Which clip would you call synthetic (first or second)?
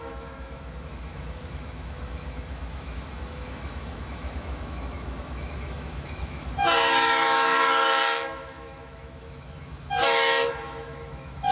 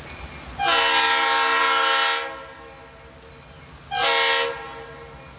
first